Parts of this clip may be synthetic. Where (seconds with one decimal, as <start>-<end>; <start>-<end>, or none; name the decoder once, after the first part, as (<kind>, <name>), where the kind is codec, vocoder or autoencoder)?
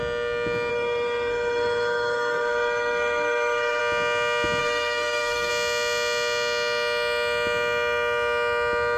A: 0.7-3.8 (codec, SNAC); 4.6-5.5